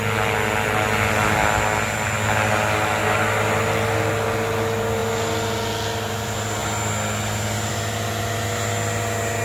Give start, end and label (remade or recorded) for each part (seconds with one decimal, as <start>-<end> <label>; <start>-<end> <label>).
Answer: 0.0-9.4 recorded